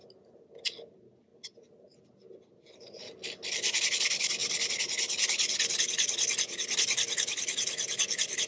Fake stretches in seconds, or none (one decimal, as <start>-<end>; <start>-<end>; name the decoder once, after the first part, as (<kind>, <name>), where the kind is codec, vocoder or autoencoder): none